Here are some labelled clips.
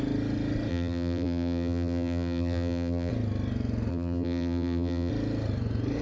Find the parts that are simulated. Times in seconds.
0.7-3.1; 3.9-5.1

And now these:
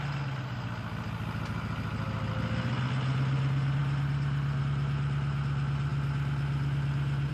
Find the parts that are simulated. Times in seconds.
none

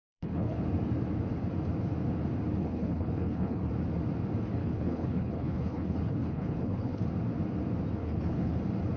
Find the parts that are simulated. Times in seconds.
0.0-0.6; 2.6-3.7; 4.6-7.0; 8.0-8.5